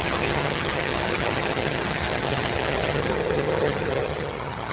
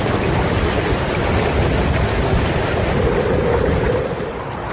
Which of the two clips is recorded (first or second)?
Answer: second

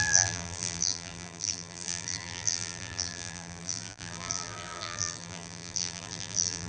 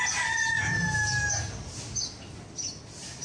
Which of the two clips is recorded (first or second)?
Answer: second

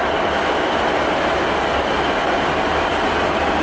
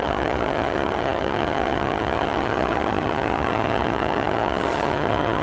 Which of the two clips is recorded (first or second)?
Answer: first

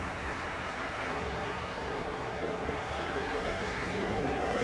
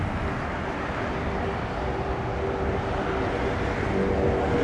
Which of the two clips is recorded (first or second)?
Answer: second